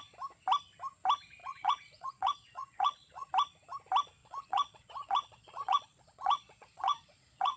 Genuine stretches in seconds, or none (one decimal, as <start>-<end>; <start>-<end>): 0.0-1.4; 3.3-4.2